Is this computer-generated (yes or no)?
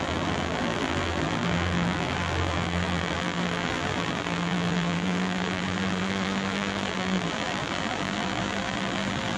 yes